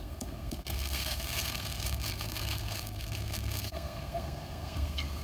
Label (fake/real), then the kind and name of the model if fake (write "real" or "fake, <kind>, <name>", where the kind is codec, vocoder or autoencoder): fake, codec, SNAC